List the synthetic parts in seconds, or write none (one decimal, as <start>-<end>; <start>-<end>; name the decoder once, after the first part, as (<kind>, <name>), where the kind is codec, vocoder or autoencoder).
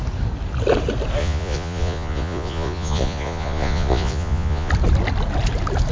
1.2-4.7 (vocoder, Vocos)